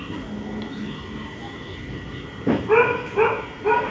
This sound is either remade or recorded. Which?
recorded